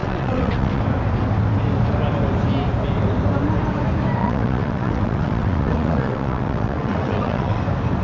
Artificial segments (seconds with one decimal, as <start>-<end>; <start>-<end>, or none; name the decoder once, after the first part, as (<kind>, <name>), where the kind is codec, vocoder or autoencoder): 0.0-0.8 (vocoder, WaveNeXt); 4.2-7.6